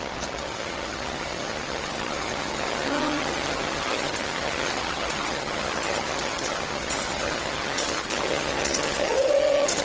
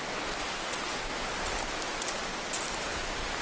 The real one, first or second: second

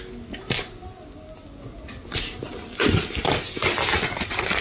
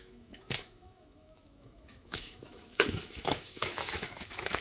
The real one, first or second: first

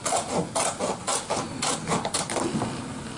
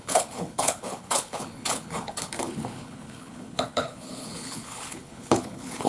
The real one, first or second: first